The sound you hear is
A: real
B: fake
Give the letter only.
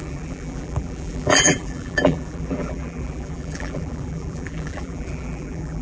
B